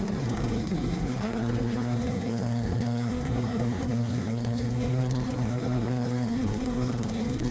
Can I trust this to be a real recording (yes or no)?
no